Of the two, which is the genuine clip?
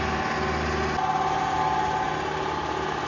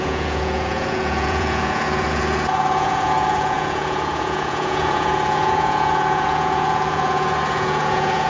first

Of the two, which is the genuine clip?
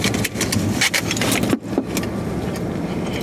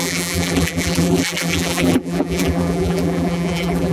first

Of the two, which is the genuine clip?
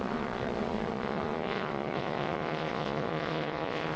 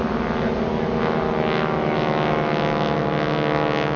second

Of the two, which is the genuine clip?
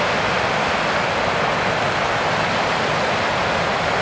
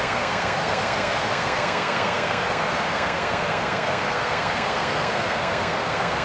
first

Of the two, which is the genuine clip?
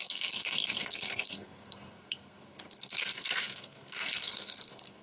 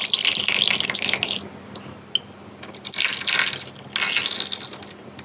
second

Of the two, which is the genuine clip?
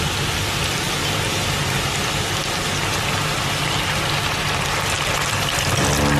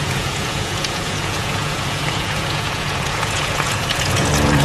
first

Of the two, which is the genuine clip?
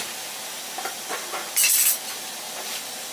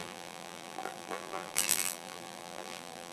first